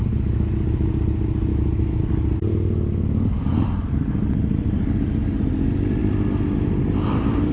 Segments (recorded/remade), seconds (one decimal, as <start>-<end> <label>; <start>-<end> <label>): 0.0-1.5 recorded; 1.5-2.0 remade; 2.0-7.5 recorded